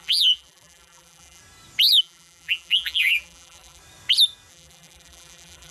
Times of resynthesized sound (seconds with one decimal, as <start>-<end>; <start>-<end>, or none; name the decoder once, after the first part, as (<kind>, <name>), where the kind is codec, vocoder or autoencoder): 0.0-1.4 (vocoder, BigVGAN v2); 2.0-3.8; 4.5-5.7